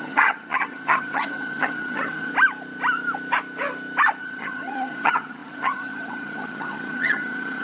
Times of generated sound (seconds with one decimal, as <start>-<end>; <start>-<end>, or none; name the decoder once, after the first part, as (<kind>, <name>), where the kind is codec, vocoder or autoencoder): 0.0-2.3 (vocoder, HiFi-GAN); 4.2-7.6